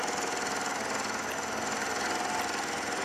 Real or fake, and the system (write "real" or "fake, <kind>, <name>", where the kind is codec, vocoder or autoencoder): real